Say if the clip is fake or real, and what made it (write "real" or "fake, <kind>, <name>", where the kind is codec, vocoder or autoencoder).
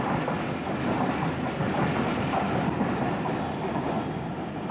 real